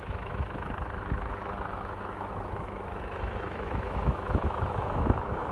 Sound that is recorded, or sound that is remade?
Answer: remade